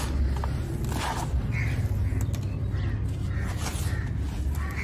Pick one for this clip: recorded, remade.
recorded